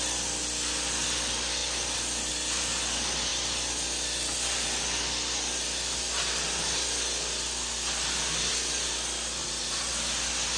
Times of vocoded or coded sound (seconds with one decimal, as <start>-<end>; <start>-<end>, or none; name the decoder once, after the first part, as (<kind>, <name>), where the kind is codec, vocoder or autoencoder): 9.4-9.9 (vocoder, BigVGAN v2)